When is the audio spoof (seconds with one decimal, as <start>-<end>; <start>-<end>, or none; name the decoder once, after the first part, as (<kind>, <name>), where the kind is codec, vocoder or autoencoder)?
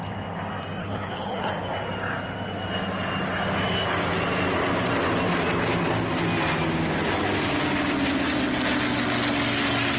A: 0.8-1.5 (codec, HILCodec)